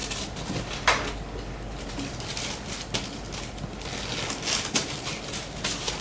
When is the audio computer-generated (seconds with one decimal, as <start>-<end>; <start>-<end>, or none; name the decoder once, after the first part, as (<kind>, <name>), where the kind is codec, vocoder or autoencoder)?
none